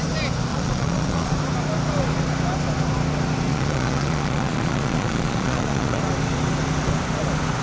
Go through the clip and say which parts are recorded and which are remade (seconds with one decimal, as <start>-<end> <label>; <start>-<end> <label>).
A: 0.0-0.5 recorded; 0.5-1.3 remade; 1.3-3.5 recorded; 3.5-6.0 remade; 6.0-7.6 recorded